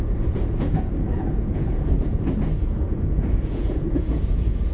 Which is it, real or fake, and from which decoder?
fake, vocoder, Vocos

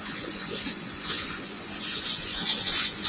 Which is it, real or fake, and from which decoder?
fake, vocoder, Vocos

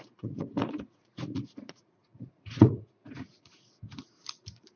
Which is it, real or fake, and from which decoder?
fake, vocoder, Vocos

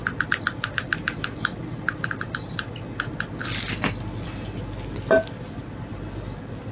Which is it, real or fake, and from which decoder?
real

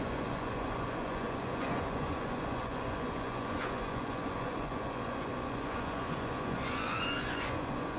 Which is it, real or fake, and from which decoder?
fake, vocoder, Vocos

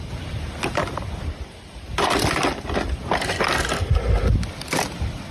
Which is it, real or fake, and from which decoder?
real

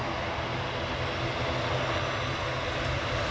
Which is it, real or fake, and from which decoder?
real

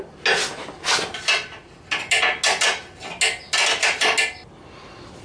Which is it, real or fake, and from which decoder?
real